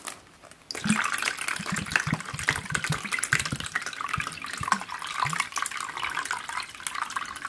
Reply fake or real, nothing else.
real